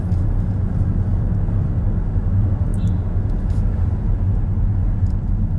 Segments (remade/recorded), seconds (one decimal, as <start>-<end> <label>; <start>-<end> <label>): 0.0-5.6 recorded